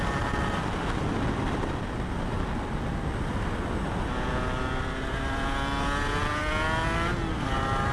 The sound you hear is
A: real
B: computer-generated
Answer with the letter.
A